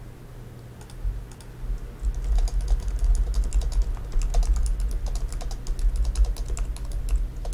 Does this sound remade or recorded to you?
recorded